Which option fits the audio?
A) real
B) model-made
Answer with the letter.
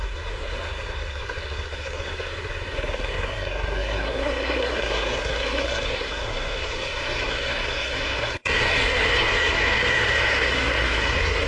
B